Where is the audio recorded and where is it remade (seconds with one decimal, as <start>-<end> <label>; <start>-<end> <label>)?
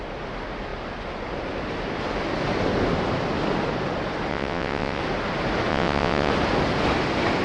0.0-4.3 recorded; 4.3-5.0 remade; 5.0-5.7 recorded; 5.7-6.3 remade; 6.3-7.4 recorded